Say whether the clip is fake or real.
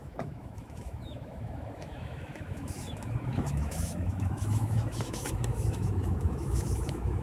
fake